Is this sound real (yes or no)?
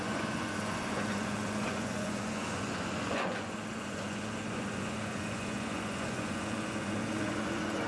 no